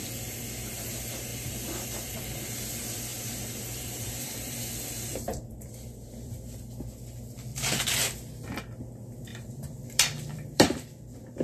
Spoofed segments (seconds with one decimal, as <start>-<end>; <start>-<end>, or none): 1.3-6.3; 7.5-8.4; 9.3-10.9